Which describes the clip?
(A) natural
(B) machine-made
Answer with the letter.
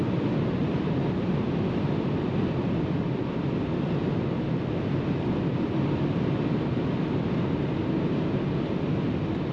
A